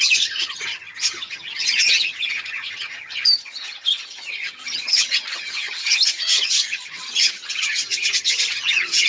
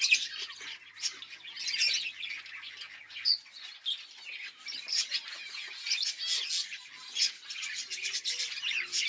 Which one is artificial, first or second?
first